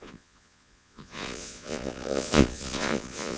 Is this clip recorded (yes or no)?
no